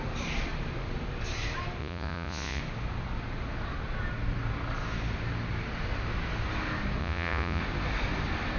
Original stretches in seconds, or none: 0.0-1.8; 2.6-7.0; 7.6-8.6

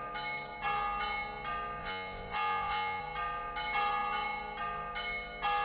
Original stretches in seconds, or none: 0.0-1.8; 3.0-5.6

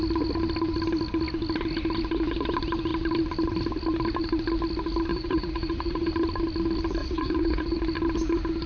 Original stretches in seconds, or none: 0.0-5.1; 6.1-7.0; 7.8-8.7

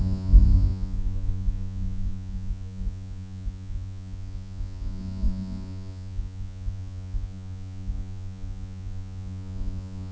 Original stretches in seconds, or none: none

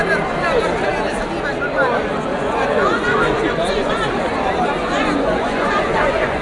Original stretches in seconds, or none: 0.0-2.3; 3.9-4.8